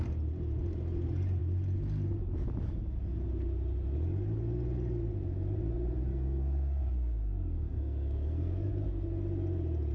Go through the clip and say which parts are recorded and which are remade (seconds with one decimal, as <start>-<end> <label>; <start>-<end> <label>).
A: 0.0-6.1 recorded; 6.1-8.7 remade; 8.7-9.9 recorded

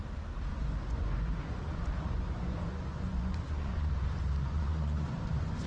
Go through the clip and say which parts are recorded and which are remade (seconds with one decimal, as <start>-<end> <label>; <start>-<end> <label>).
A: 0.0-0.5 recorded; 0.5-3.9 remade; 3.9-4.4 recorded; 4.4-5.7 remade

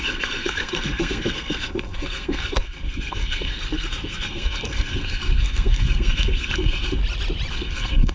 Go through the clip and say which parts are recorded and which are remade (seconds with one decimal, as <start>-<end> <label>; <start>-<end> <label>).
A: 0.0-7.0 remade; 7.0-7.5 recorded; 7.5-8.1 remade

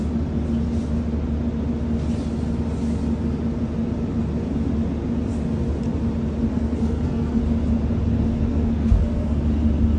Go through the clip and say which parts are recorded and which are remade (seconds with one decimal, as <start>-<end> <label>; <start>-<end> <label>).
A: 0.0-6.5 recorded; 6.5-7.4 remade; 7.4-8.5 recorded; 8.5-9.4 remade; 9.4-10.0 recorded

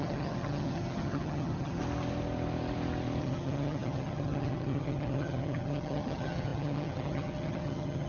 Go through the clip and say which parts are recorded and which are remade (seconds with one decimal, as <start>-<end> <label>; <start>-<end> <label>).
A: 0.0-1.8 remade; 1.8-3.2 recorded; 3.2-8.1 remade